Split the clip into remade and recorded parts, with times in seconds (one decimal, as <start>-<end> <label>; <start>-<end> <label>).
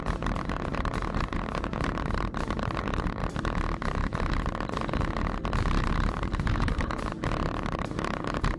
0.0-3.2 remade; 3.2-5.9 recorded; 5.9-8.6 remade